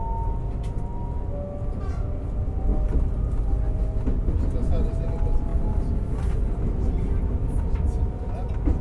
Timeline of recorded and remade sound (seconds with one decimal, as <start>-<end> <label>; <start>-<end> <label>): 0.0-8.8 recorded